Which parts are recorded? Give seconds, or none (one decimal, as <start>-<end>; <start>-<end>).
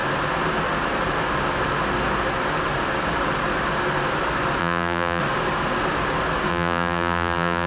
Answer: 0.0-4.6; 5.2-6.5